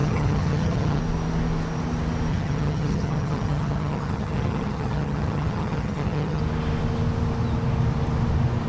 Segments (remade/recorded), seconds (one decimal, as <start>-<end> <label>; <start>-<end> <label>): 0.0-1.0 remade; 1.0-2.3 recorded; 2.3-6.4 remade; 6.4-8.7 recorded